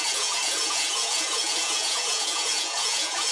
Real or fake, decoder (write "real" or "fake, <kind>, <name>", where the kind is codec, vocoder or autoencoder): fake, vocoder, Vocos